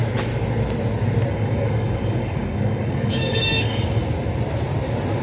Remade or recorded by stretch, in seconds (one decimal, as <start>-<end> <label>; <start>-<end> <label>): 0.0-1.3 recorded; 1.3-4.0 remade; 4.0-5.2 recorded